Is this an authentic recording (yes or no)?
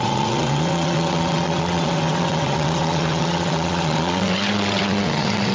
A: no